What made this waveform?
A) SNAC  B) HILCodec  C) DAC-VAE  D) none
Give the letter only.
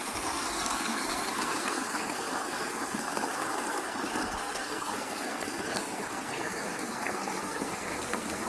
A